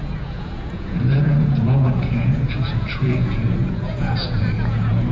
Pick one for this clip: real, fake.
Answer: fake